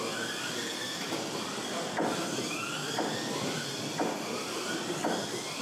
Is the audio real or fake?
real